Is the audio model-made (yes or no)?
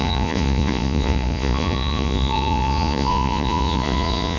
yes